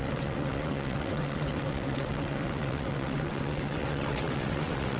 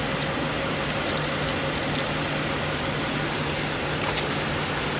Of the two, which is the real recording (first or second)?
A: second